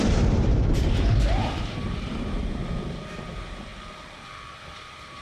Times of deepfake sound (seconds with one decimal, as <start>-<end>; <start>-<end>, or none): 0.0-2.6; 3.3-3.7; 4.5-5.2